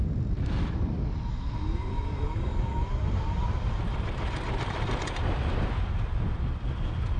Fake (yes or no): yes